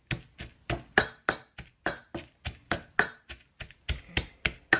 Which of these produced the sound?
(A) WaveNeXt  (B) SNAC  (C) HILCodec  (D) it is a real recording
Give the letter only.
D